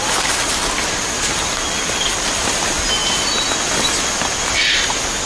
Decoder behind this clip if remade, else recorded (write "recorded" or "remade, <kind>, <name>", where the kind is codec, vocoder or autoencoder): recorded